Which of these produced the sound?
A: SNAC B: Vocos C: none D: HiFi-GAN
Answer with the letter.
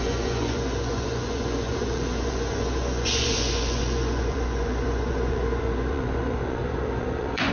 B